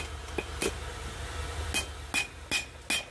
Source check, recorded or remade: recorded